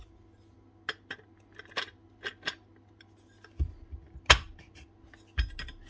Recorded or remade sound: recorded